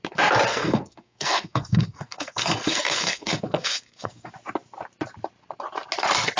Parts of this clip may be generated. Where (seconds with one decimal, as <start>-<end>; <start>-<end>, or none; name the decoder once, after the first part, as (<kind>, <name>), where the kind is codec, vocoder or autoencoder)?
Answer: 0.5-4.3 (codec, SNAC)